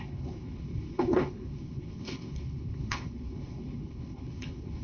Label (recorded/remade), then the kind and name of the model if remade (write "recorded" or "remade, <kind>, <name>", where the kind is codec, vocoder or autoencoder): remade, codec, HILCodec